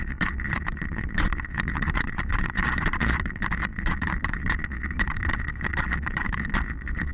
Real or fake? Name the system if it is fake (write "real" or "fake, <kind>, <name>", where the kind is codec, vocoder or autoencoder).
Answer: fake, vocoder, Vocos